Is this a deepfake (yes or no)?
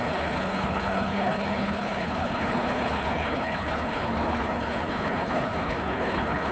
yes